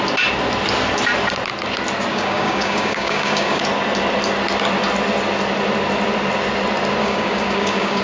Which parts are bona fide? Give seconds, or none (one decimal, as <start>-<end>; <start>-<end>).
0.0-2.1; 3.6-7.0